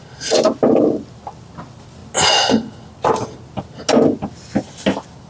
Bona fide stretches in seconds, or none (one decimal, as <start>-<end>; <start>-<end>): 0.0-5.3